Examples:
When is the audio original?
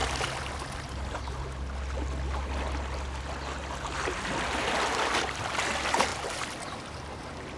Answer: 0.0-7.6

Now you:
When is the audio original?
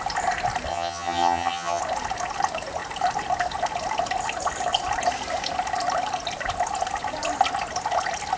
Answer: 0.0-0.7; 1.8-8.4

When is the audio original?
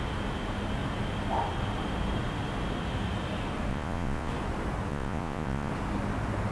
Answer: 0.0-3.7; 4.3-4.9; 5.7-6.5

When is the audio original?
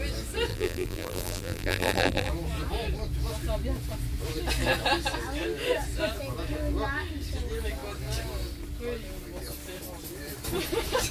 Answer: 0.0-0.5; 2.3-11.1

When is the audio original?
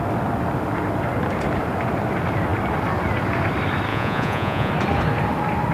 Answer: 0.0-3.9; 4.7-5.7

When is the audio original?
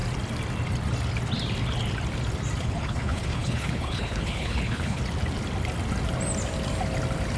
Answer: 0.0-2.6; 5.0-7.4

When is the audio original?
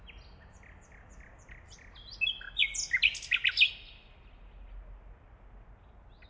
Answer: 0.0-6.3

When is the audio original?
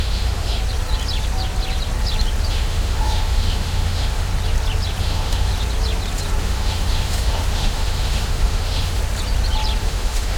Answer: 0.6-2.5; 4.3-5.0; 5.5-6.4; 9.0-9.8